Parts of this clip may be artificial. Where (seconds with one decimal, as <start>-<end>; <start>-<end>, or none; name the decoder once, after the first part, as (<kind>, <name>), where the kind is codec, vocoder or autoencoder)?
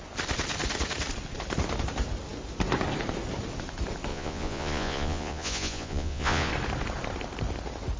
4.1-6.5 (vocoder, Vocos)